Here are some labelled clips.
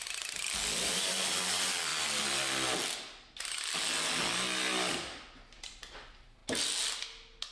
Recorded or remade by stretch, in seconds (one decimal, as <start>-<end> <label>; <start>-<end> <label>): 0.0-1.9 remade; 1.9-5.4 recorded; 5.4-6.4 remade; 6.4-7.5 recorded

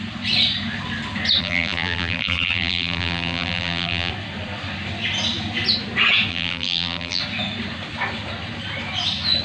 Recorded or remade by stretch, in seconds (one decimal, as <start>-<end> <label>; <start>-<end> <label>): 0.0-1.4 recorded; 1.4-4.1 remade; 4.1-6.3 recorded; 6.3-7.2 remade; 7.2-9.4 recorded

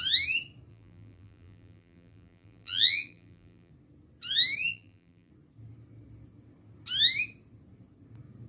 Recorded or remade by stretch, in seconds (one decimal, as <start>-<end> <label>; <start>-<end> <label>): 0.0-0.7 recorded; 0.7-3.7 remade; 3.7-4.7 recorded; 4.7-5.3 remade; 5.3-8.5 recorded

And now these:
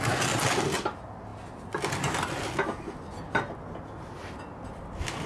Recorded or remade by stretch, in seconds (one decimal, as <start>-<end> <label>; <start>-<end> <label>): 0.0-5.3 recorded